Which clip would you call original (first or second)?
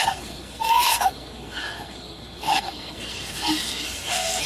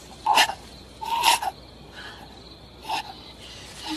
second